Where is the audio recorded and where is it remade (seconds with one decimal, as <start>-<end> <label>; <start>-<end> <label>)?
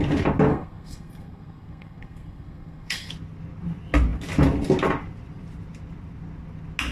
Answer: 0.0-0.5 recorded; 0.5-3.1 remade; 3.1-6.9 recorded